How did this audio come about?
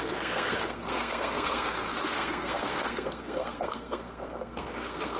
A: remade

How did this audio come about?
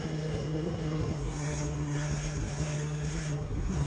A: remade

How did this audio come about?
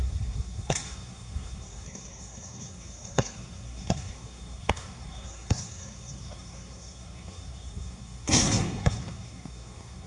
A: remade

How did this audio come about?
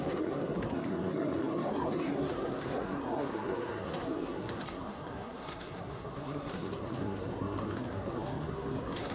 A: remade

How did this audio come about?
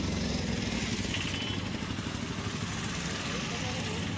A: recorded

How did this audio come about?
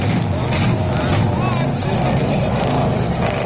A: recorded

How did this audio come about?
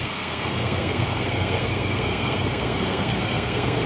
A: remade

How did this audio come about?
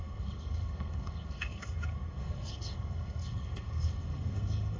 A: remade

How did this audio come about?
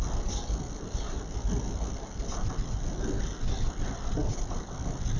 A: recorded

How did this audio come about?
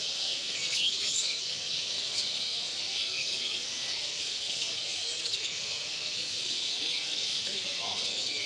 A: remade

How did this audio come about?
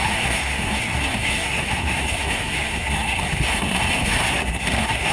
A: remade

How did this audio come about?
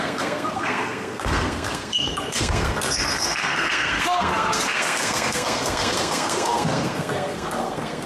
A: remade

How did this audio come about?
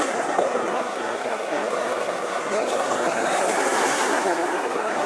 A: remade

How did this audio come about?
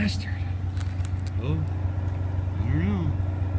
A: recorded